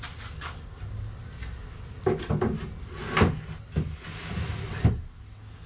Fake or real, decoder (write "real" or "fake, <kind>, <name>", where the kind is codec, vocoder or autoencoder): real